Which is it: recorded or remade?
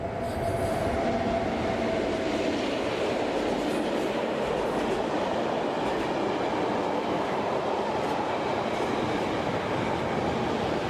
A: recorded